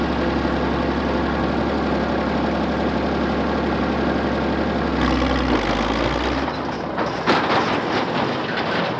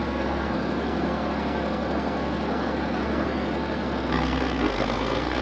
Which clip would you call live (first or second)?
first